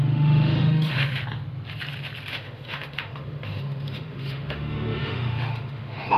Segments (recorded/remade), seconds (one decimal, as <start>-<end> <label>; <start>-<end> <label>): 0.0-1.2 remade; 1.2-2.3 recorded; 2.3-6.2 remade